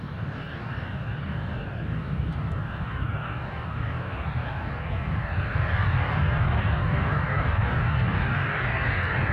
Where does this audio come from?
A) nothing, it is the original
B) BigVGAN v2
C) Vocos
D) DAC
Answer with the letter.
D